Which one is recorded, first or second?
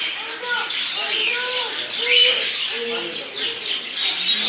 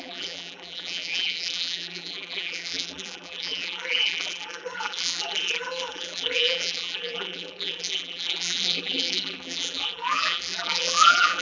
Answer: first